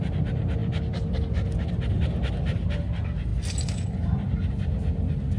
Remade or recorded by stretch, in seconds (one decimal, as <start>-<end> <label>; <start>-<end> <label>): 0.0-5.4 recorded